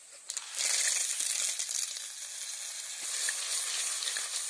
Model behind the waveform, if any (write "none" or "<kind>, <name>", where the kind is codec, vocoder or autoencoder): none